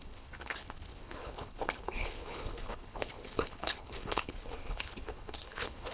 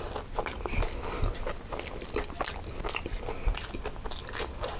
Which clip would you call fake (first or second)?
first